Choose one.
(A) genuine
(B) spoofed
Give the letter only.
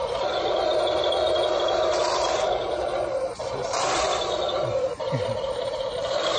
B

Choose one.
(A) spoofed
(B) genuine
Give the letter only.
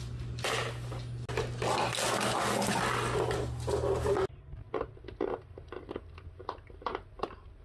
B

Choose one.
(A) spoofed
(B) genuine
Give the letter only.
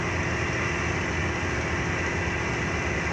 B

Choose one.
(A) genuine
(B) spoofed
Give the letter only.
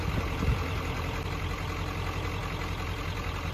A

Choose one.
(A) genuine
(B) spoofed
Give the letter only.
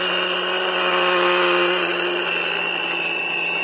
A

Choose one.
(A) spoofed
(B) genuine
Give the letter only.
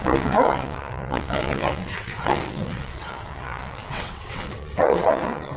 A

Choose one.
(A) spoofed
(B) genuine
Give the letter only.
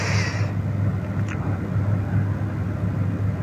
B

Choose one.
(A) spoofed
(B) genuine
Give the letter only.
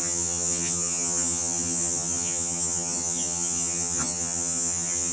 A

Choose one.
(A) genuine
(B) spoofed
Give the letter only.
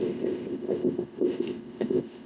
B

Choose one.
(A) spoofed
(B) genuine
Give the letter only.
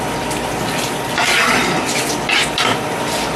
B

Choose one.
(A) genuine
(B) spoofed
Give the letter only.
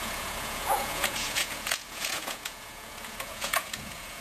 B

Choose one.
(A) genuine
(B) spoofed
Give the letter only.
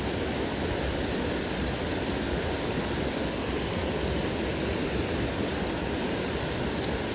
A